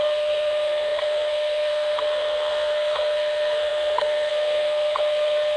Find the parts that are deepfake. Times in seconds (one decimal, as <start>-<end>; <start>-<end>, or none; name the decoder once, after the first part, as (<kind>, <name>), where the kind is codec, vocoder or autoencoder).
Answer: 0.0-5.6 (codec, SNAC)